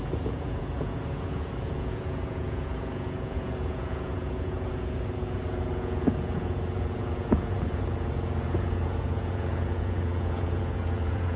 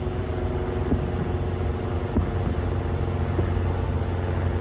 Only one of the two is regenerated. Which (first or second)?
first